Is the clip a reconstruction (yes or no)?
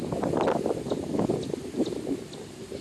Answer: no